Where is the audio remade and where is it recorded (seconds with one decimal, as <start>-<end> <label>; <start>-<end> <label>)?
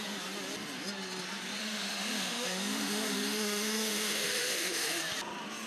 0.0-1.6 recorded; 1.6-5.0 remade; 5.0-5.7 recorded